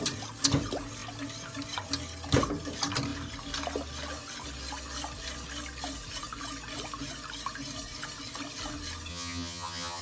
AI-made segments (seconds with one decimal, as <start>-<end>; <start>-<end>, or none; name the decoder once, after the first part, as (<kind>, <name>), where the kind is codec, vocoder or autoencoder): 9.1-10.0 (vocoder, HiFi-GAN)